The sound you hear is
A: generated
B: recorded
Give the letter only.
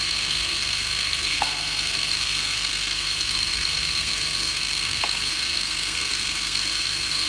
A